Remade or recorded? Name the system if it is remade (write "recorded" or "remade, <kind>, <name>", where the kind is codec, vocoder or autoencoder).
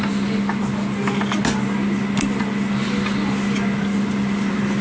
recorded